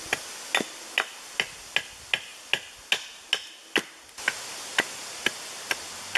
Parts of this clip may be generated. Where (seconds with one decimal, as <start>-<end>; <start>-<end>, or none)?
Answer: none